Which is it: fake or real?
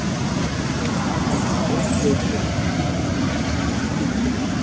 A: real